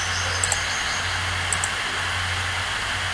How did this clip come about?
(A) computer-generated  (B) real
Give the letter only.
B